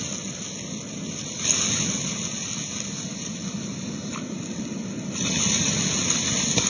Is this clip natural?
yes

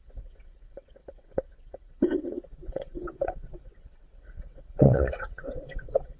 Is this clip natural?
no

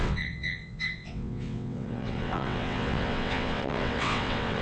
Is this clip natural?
no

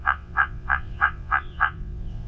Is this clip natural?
no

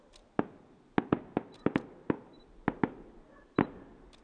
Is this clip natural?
yes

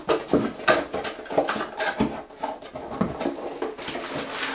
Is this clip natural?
yes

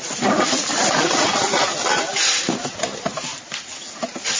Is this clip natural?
yes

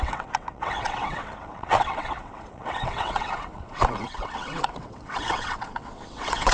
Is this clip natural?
no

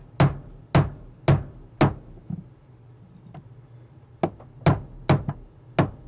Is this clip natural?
yes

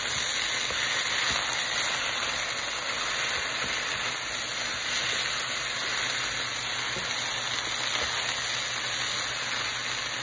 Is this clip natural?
yes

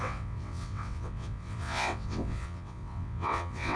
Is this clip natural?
no